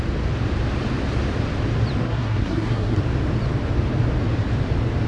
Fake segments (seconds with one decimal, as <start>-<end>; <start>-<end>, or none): 2.0-3.0